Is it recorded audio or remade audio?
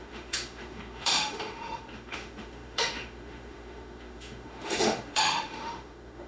remade